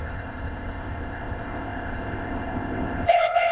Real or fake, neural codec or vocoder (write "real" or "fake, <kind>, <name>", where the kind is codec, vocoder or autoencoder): fake, codec, ZipCodec